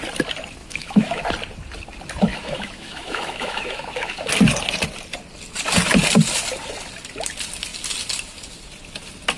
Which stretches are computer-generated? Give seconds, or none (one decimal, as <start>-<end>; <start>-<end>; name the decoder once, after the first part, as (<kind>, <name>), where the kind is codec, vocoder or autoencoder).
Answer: 0.6-1.2 (autoencoder, DAC-VAE); 2.3-4.3